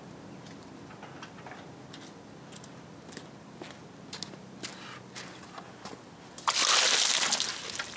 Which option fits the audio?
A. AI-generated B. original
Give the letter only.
B